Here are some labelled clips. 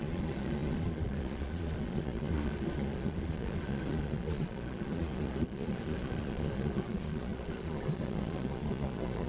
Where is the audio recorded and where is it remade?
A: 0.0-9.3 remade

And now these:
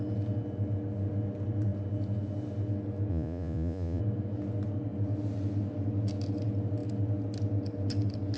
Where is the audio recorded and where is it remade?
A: 0.0-3.1 recorded; 3.1-4.0 remade; 4.0-8.4 recorded

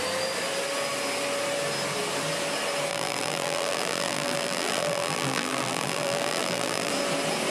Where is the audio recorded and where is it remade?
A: 0.0-2.9 recorded; 2.9-6.9 remade; 6.9-7.5 recorded

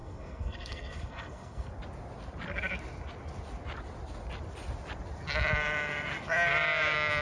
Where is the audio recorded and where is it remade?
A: 0.0-1.7 remade; 1.7-7.2 recorded

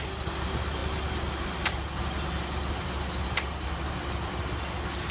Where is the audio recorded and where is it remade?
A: 0.0-5.1 recorded

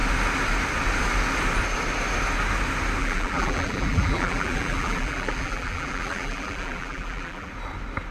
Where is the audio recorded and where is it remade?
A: 0.0-3.0 recorded; 3.0-7.5 remade; 7.5-8.1 recorded

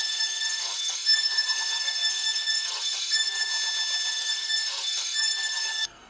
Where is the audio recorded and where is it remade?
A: 0.0-3.5 remade; 3.5-4.1 recorded; 4.1-6.1 remade